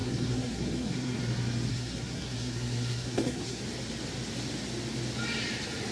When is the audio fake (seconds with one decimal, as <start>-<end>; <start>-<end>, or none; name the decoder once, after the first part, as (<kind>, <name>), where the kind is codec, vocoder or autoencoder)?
0.0-1.2 (codec, SNAC); 1.7-3.6